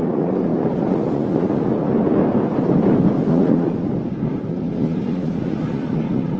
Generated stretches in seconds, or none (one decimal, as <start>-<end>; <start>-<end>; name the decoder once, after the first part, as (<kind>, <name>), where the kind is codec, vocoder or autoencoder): 0.0-2.2 (vocoder, Vocos); 3.3-3.9; 4.5-6.4